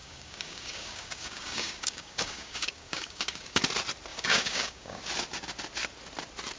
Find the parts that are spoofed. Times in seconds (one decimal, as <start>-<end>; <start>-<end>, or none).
0.0-3.6; 4.1-5.0